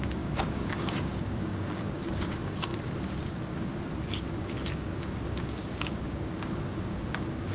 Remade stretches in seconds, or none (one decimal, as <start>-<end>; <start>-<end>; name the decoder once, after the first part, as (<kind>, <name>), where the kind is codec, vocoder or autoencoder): 0.0-2.7 (codec, DAC); 3.2-3.7; 5.0-7.5